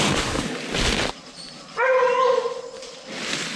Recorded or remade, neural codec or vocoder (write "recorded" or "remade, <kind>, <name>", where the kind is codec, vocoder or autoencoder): recorded